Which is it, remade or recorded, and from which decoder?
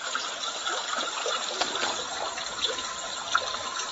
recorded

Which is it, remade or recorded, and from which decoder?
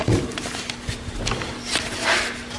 recorded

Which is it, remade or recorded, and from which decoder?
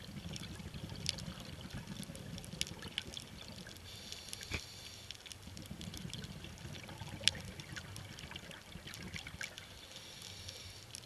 recorded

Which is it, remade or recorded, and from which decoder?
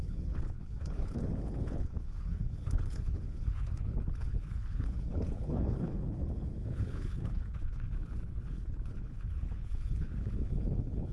remade, codec, HILCodec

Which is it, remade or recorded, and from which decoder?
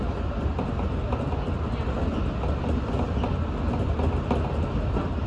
recorded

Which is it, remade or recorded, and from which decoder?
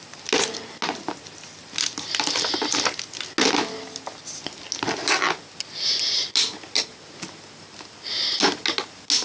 recorded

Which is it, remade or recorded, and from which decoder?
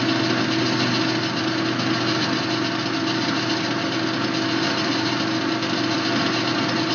recorded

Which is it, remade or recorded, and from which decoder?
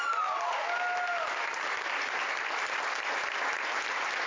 recorded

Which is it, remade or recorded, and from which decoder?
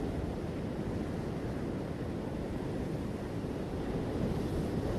recorded